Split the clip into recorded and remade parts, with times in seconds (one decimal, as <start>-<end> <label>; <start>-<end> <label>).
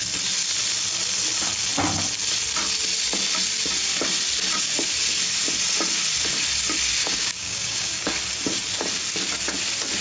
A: 0.0-7.0 recorded; 7.0-8.1 remade; 8.1-10.0 recorded